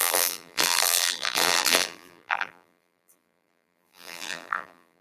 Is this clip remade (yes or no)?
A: yes